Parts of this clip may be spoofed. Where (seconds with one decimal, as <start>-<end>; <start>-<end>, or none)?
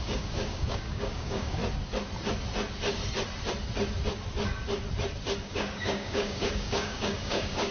0.0-1.6; 5.4-7.7